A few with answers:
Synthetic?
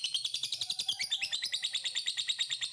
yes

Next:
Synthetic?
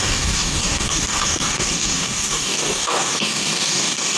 yes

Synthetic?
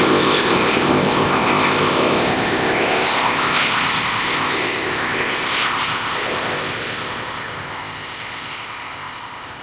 yes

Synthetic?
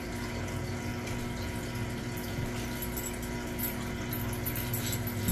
no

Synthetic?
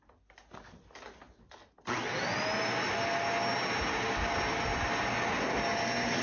no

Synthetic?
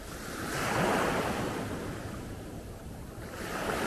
no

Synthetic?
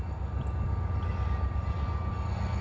no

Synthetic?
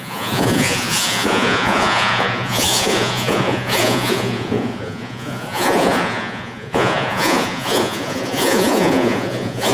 yes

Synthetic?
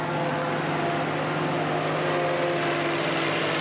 no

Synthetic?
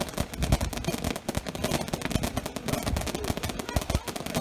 no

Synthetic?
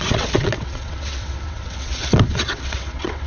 yes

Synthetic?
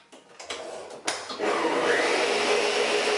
no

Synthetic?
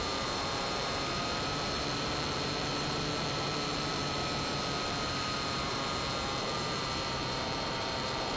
yes